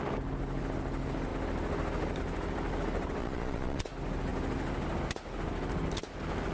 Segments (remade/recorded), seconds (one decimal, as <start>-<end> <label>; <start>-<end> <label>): 0.0-3.2 recorded; 3.2-3.9 remade; 3.9-6.5 recorded

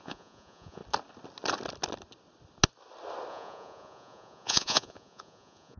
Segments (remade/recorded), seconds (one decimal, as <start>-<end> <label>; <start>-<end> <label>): 0.0-0.8 remade; 0.8-3.3 recorded; 3.3-5.8 remade

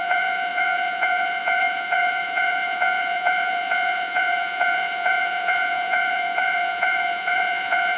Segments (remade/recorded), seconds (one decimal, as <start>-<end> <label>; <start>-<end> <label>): 0.0-8.0 remade

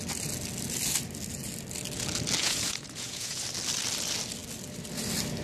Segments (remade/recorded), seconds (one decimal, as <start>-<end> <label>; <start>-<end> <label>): 0.0-2.4 recorded; 2.4-3.4 remade; 3.4-5.4 recorded

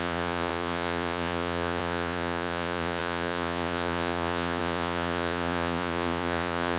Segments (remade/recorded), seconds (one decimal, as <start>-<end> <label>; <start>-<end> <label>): 0.0-6.8 remade

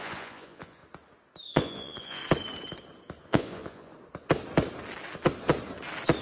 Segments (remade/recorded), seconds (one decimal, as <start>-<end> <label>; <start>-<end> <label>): 0.0-0.8 remade; 0.8-1.5 recorded; 1.5-2.2 remade; 2.2-3.2 recorded; 3.2-3.9 remade; 3.9-6.2 recorded

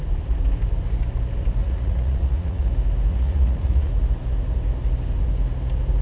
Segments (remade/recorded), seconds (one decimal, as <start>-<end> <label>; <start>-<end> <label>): 0.0-1.6 recorded; 1.6-2.7 remade; 2.7-3.1 recorded; 3.1-3.9 remade; 3.9-6.0 recorded

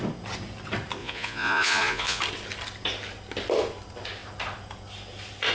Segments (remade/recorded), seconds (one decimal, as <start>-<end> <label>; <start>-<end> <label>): 0.0-1.0 recorded; 1.0-2.2 remade; 2.2-5.5 recorded